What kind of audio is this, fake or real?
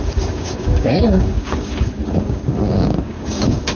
fake